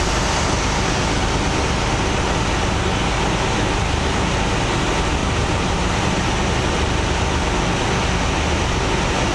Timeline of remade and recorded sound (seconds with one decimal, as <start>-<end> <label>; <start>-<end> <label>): 0.0-5.2 recorded; 5.2-5.9 remade; 5.9-9.3 recorded